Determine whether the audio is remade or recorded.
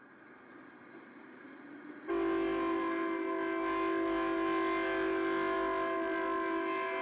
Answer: recorded